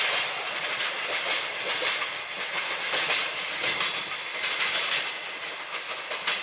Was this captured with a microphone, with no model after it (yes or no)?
yes